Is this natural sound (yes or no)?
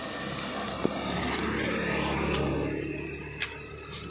yes